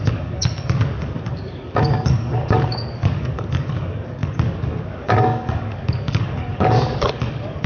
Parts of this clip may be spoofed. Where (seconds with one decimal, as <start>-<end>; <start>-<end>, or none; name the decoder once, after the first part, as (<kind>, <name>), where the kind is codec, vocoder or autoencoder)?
0.0-7.7 (codec, DAC)